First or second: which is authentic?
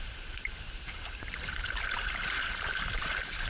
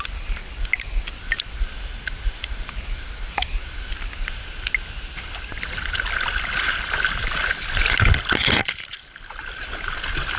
second